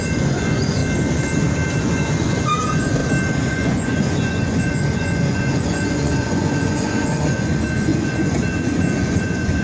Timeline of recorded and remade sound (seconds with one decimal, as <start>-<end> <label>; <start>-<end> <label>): 0.0-0.8 remade; 0.8-1.8 recorded; 1.8-3.0 remade; 3.0-3.5 recorded; 3.5-9.6 remade